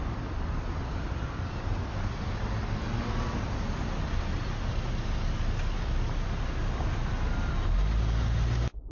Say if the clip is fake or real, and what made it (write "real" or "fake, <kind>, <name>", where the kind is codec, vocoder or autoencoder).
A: real